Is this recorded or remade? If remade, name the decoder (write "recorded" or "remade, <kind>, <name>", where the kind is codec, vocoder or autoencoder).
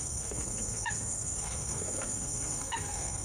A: remade, codec, SNAC